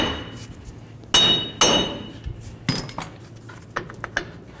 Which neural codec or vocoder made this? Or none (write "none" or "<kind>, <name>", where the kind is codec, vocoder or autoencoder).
none